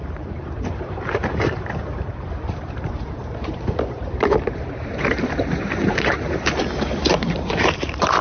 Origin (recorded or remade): remade